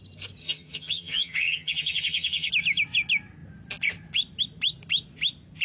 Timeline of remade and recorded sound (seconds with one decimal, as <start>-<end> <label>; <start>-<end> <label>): 0.0-0.4 recorded; 0.4-2.5 remade; 2.5-5.6 recorded